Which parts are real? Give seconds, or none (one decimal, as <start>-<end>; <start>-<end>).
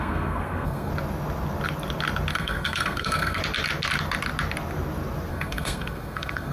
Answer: 0.9-2.3; 3.4-5.3